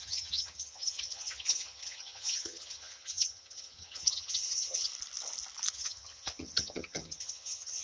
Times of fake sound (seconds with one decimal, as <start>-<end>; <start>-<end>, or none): 0.0-4.9; 5.7-7.8